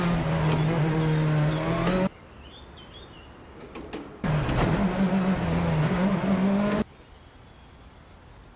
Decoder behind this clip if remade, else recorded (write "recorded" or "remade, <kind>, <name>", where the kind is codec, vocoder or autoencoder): recorded